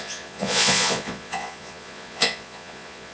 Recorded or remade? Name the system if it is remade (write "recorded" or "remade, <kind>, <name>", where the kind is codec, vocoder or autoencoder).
remade, vocoder, Vocos